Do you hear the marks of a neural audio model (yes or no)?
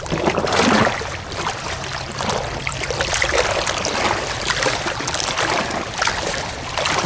yes